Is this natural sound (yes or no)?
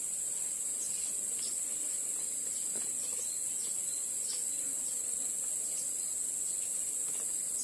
yes